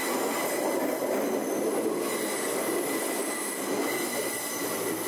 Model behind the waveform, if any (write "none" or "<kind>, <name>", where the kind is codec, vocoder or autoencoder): none